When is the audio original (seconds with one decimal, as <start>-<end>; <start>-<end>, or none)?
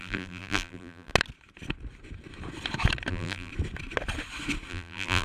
1.1-3.1; 3.5-4.7